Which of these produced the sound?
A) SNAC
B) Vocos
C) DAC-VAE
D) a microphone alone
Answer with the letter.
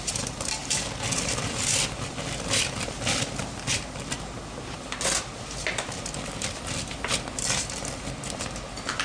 D